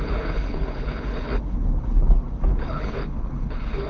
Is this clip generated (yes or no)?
yes